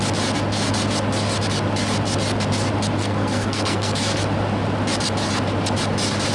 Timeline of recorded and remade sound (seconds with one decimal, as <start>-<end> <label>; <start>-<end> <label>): 0.0-3.0 recorded; 3.0-4.2 remade; 4.2-6.3 recorded